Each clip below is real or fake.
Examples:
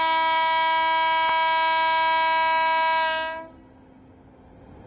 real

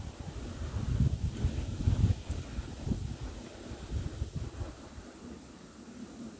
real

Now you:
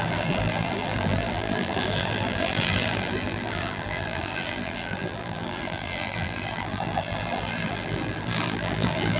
fake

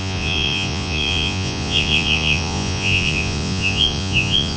fake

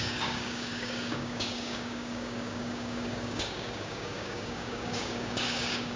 fake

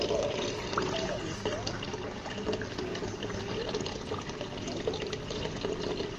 real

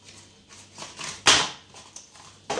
real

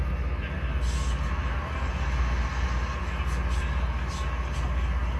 real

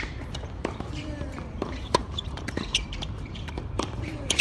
fake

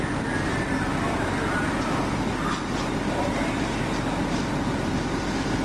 real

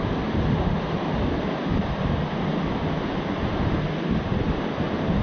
real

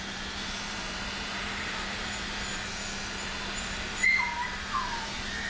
fake